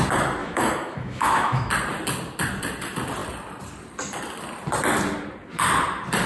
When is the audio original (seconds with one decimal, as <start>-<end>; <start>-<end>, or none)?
0.0-0.4; 1.7-6.3